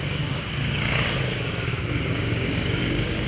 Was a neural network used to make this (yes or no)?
yes